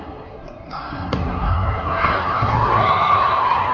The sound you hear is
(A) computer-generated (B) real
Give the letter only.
A